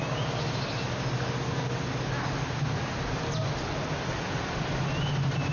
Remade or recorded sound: recorded